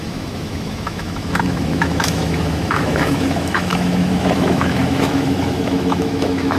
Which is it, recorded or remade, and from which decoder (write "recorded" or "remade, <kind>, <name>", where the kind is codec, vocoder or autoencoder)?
remade, autoencoder, DAC-VAE